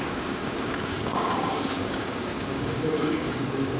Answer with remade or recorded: remade